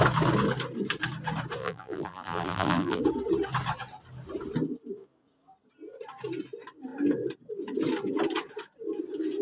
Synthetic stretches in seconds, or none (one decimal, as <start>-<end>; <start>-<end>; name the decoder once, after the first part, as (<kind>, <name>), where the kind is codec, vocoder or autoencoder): 1.6-3.0 (vocoder, BigVGAN v2)